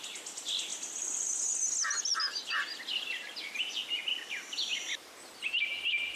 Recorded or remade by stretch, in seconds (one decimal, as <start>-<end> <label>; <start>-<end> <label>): 0.0-6.2 recorded